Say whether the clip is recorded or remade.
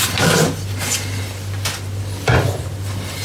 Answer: recorded